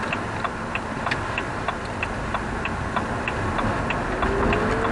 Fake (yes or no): no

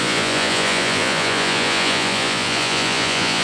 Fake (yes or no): yes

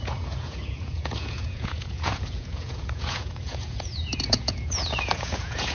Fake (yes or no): yes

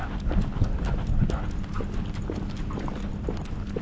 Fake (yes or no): no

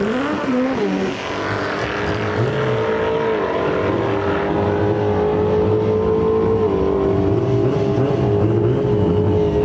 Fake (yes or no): no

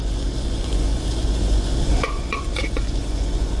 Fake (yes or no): yes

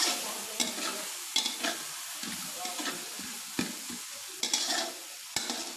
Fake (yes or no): no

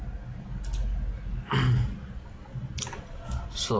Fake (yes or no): no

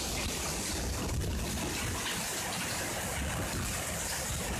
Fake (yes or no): no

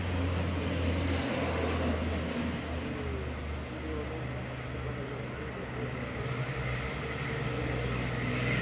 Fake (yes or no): no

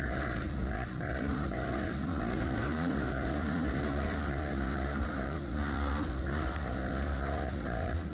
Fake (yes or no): yes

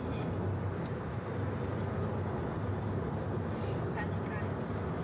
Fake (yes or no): no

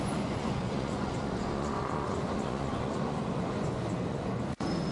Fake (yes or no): yes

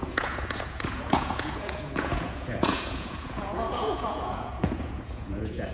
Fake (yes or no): yes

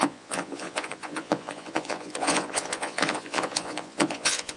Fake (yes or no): yes